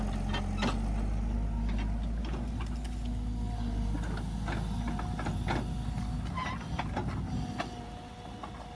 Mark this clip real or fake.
real